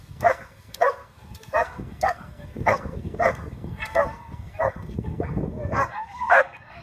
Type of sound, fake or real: fake